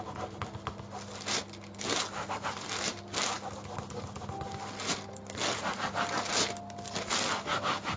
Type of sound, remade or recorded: recorded